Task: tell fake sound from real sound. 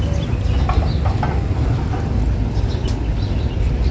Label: real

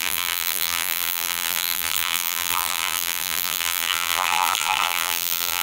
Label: fake